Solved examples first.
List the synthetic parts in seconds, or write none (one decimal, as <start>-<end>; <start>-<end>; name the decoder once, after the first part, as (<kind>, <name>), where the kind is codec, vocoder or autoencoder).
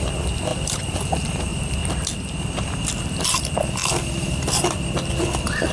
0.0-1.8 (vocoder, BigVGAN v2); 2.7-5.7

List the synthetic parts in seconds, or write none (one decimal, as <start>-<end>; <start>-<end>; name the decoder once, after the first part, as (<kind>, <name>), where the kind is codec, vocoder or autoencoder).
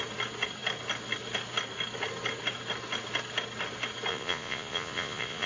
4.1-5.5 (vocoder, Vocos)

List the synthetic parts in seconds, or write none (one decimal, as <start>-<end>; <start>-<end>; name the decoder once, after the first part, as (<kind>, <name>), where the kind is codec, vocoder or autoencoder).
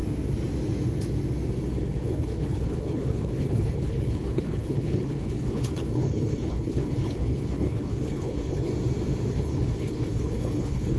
1.8-8.7 (codec, HILCodec); 9.3-11.0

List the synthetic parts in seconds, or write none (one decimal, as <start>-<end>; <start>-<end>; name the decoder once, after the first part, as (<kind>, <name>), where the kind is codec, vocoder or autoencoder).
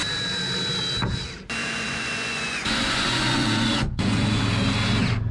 1.6-4.4 (vocoder, Vocos)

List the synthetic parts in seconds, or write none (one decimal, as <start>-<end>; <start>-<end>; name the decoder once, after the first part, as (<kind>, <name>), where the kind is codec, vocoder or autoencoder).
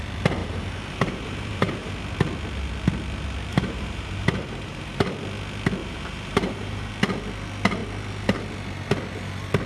0.4-1.9 (vocoder, BigVGAN v2); 3.5-5.1; 5.8-6.9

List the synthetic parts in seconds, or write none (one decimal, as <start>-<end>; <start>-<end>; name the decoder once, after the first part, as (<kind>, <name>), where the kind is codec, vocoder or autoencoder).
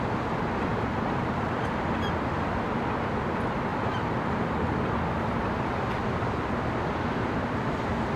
0.7-1.7 (vocoder, BigVGAN v2); 3.7-5.9